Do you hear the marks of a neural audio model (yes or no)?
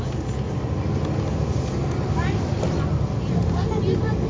no